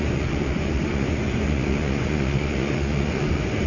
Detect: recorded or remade remade